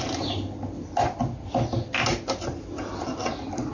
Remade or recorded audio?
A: recorded